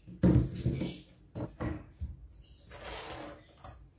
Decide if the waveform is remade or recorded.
recorded